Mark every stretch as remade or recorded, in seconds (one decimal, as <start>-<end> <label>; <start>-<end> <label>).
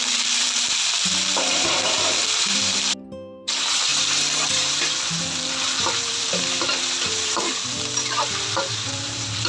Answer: 0.0-9.5 remade